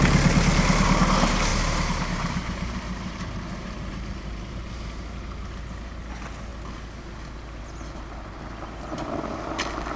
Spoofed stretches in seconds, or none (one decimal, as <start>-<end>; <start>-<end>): 1.5-6.1